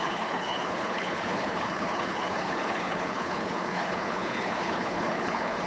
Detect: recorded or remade remade